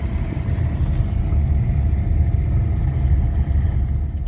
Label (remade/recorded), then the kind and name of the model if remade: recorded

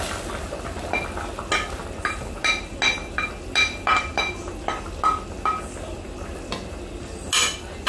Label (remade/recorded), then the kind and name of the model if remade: recorded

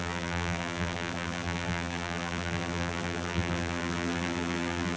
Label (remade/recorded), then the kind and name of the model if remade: remade, vocoder, BigVGAN v2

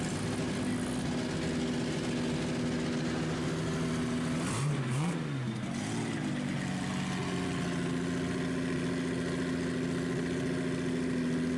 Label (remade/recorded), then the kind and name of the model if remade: recorded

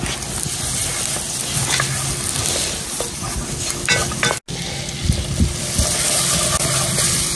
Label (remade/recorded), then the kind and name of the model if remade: recorded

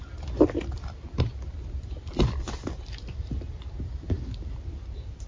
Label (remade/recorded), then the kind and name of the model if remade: recorded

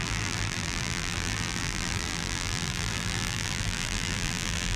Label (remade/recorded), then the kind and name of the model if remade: remade, vocoder, BigVGAN v2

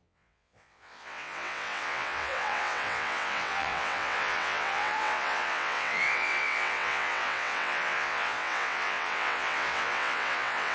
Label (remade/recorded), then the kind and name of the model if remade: remade, vocoder, WaveNeXt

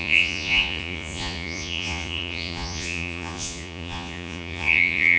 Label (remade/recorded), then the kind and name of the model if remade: remade, vocoder, Vocos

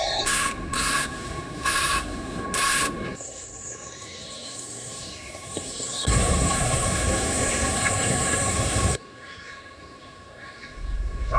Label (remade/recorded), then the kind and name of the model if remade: remade, codec, SNAC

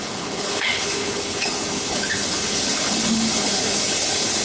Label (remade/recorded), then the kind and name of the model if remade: remade, codec, HILCodec